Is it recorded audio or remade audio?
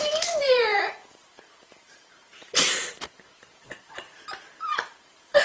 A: remade